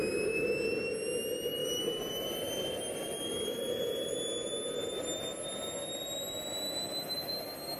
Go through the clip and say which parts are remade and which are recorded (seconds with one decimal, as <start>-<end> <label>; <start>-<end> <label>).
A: 0.0-1.6 recorded; 1.6-4.5 remade; 4.5-7.8 recorded